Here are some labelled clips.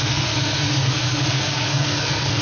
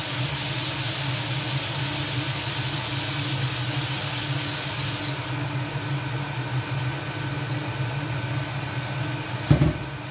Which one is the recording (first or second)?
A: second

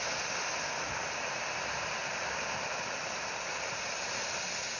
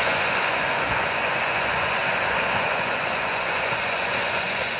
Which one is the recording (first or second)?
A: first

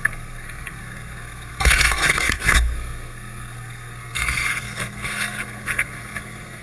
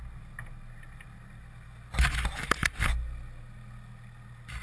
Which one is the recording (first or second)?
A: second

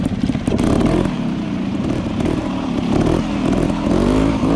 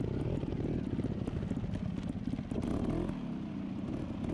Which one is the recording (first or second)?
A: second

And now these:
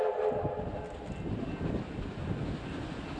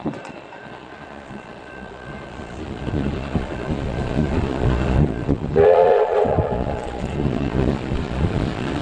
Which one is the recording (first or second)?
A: first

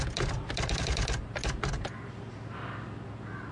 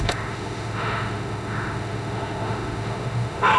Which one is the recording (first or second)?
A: first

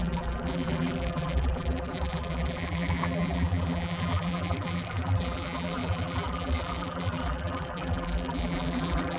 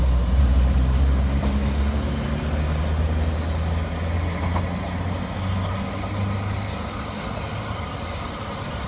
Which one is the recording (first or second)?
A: second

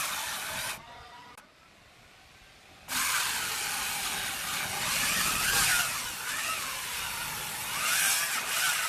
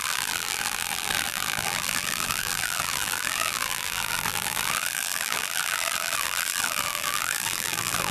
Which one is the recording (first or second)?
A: first